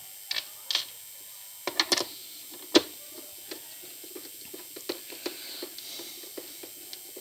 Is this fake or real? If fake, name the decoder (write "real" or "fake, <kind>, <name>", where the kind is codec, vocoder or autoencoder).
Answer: real